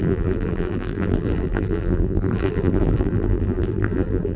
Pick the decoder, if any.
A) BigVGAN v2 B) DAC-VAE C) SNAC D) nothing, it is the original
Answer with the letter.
A